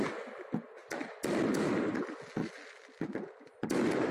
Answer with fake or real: real